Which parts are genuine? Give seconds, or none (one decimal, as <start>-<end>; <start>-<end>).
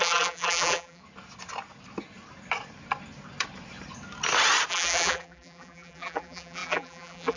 1.0-4.7